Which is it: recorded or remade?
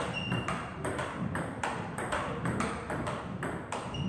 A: remade